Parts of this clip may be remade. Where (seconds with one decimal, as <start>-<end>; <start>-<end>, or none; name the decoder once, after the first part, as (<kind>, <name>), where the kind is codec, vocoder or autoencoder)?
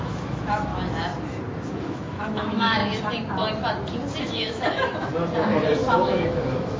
0.0-0.7 (autoencoder, DAC-VAE); 1.7-2.8; 4.2-5.1; 5.9-6.8